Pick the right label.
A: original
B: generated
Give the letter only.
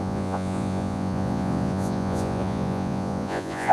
B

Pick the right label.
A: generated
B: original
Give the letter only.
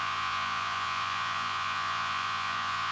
A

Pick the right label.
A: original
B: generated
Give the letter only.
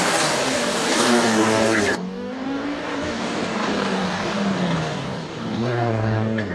B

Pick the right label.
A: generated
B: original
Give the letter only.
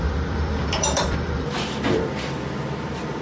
A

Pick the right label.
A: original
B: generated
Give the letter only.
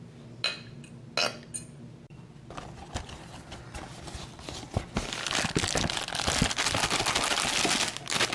A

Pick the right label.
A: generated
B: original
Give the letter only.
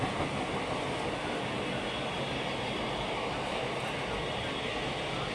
B